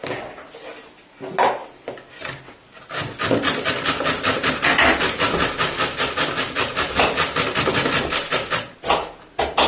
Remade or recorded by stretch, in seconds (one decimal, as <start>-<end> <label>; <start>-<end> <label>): 0.0-9.7 recorded